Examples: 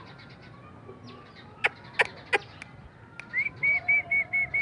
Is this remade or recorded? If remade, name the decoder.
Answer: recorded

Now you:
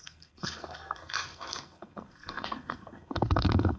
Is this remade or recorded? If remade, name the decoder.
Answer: remade, codec, SNAC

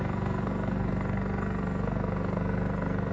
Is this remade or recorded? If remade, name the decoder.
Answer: remade, codec, SNAC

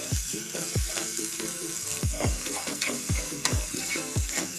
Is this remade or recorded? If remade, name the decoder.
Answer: remade, codec, SNAC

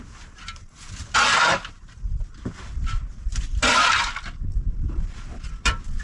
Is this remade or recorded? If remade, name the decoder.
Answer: recorded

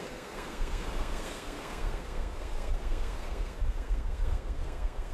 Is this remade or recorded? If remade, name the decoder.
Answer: remade, codec, SNAC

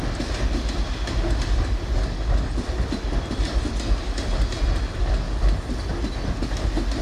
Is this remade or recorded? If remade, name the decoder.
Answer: recorded